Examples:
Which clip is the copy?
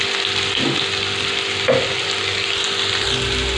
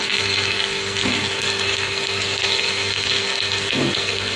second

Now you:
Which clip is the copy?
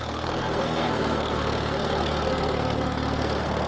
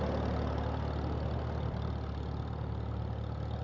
first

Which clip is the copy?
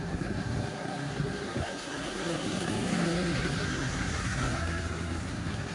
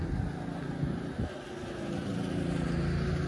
first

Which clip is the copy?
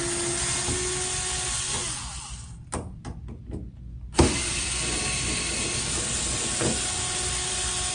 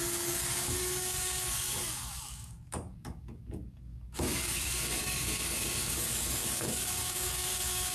second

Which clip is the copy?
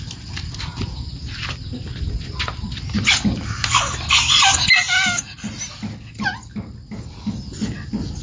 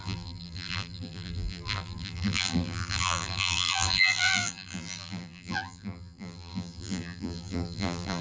second